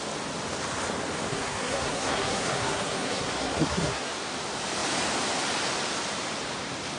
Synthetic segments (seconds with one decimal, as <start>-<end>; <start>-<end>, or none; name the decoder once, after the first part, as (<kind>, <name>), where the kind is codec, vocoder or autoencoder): 1.3-4.1 (codec, SNAC)